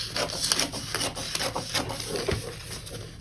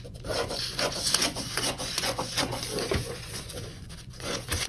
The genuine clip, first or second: first